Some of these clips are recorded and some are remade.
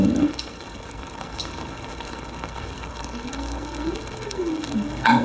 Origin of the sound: remade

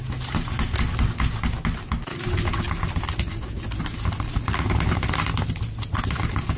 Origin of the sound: recorded